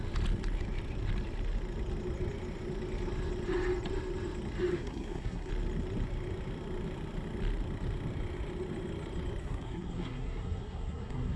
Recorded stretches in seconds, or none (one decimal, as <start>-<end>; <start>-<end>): 0.0-4.7; 5.5-9.4